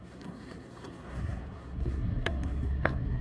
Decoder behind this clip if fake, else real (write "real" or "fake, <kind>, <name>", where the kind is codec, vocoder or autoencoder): fake, codec, SNAC